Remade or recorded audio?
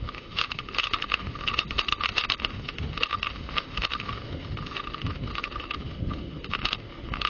remade